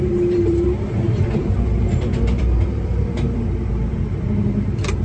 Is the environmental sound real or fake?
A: fake